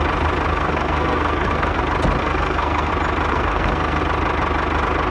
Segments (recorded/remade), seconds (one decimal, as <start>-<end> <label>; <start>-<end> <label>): 0.0-0.5 recorded; 0.5-1.8 remade; 1.8-2.2 recorded; 2.2-2.9 remade; 2.9-3.3 recorded; 3.3-4.0 remade; 4.0-5.1 recorded

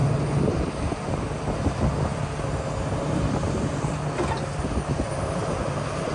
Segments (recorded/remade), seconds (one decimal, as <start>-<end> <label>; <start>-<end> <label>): 0.0-6.1 recorded

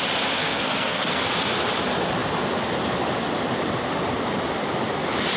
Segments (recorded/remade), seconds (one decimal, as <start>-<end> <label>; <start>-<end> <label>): 0.0-0.4 recorded; 0.4-1.3 remade; 1.3-5.4 recorded

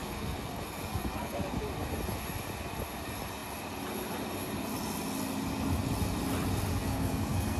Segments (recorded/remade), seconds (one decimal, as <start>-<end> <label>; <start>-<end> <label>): 0.0-1.4 remade; 1.4-6.7 recorded; 6.7-7.6 remade

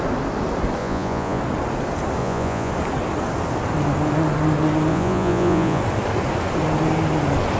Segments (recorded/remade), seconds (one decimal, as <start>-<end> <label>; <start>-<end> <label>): 0.0-0.8 recorded; 0.8-1.4 remade; 1.4-2.2 recorded; 2.2-2.7 remade; 2.7-4.9 recorded; 4.9-5.8 remade; 5.8-7.6 recorded